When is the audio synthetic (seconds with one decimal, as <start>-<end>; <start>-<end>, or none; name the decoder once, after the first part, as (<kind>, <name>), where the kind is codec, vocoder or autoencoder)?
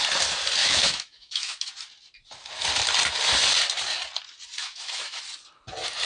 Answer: 0.6-1.7 (autoencoder, DAC-VAE); 4.6-5.2